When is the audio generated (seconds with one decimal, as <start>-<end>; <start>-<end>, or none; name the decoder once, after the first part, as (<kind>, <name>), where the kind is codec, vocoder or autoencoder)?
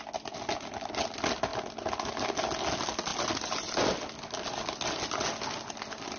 none